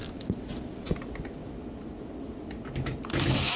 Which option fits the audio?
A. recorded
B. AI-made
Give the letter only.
A